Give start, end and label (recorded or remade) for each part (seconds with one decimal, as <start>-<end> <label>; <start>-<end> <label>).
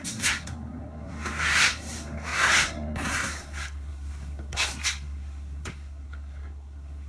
0.0-7.1 remade